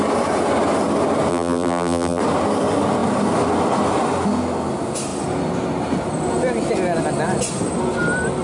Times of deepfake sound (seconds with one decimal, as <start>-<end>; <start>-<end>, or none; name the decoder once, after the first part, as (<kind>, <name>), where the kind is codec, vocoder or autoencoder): 1.3-2.2 (vocoder, BigVGAN v2)